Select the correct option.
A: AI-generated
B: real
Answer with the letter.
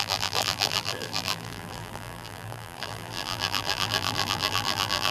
A